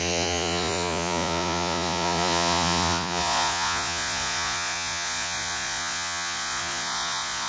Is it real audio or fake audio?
fake